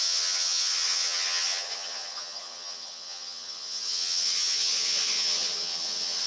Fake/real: fake